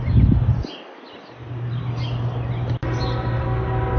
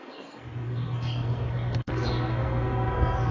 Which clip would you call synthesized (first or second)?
second